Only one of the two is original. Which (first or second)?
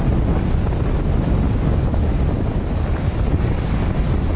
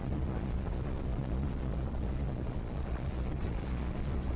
first